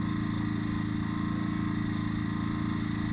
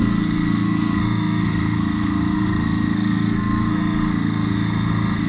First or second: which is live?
first